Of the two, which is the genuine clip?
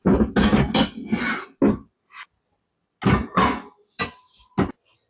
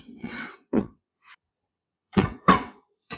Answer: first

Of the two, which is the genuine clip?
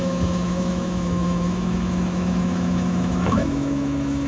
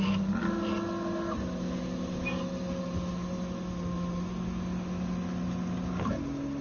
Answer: second